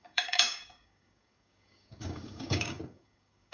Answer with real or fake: fake